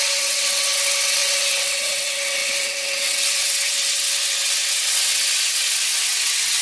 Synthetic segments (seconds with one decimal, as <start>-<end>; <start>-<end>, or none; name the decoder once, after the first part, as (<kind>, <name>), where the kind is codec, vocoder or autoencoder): 0.0-6.6 (vocoder, WaveNeXt)